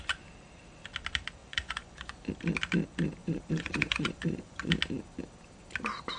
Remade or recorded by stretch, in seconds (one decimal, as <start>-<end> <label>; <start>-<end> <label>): 0.0-1.4 recorded; 1.4-2.2 remade; 2.2-3.2 recorded; 3.2-4.7 remade; 4.7-6.2 recorded